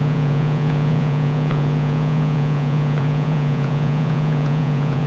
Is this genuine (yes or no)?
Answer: no